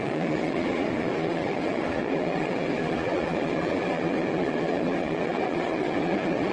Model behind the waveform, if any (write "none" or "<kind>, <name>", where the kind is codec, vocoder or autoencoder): vocoder, Vocos